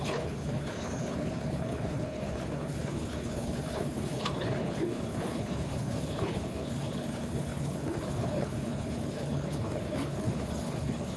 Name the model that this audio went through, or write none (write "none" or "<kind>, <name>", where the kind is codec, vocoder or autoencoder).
codec, HILCodec